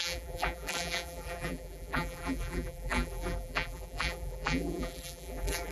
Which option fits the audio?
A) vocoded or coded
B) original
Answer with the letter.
A